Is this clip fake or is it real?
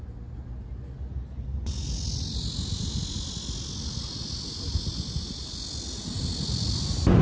real